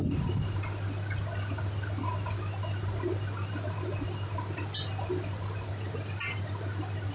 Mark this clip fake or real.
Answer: real